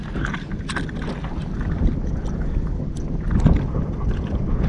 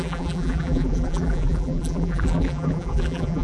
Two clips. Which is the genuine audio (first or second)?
first